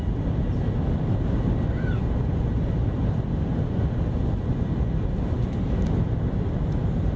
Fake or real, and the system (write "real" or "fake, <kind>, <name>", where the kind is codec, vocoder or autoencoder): real